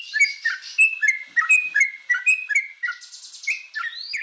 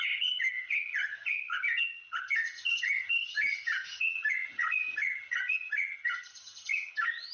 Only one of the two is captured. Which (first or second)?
first